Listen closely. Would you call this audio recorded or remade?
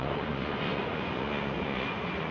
remade